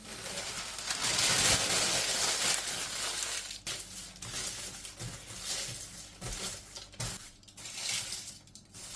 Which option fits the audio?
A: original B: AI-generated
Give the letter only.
A